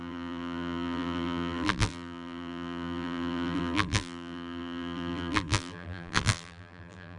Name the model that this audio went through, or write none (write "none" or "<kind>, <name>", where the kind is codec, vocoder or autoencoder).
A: vocoder, BigVGAN v2